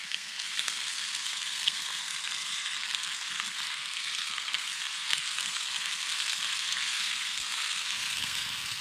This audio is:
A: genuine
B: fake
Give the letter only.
B